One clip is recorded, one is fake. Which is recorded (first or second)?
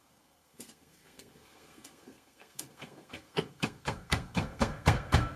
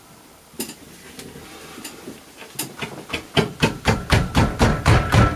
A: second